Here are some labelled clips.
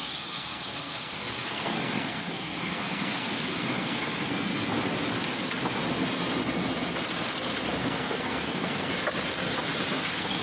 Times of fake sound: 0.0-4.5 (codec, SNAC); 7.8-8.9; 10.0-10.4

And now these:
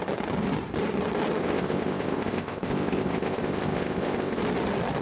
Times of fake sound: 1.4-4.4 (codec, ZipCodec)

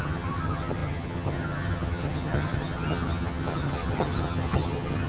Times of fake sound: 0.0-5.1 (vocoder, HiFi-GAN)

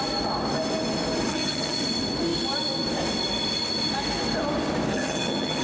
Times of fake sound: 1.3-1.8 (vocoder, HiFi-GAN); 4.9-5.6